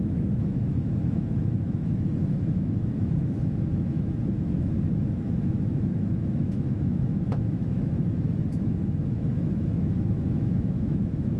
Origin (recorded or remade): remade